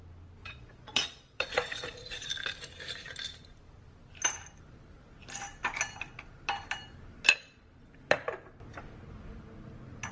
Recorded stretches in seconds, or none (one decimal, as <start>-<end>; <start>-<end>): 0.0-0.4; 2.3-10.1